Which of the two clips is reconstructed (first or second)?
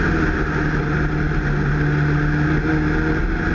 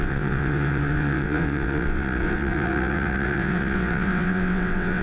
second